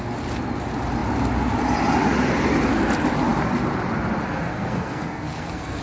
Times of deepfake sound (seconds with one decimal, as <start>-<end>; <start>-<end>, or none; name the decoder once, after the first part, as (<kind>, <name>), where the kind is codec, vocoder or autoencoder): 4.5-5.8 (codec, SNAC)